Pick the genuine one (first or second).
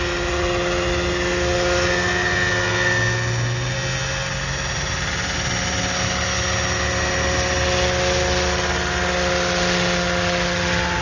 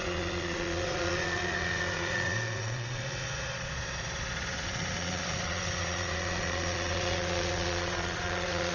first